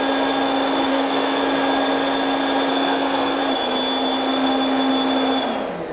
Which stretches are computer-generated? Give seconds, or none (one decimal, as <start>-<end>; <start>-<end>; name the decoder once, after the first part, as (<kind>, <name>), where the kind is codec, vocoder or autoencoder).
0.9-1.4 (codec, SNAC); 2.7-3.4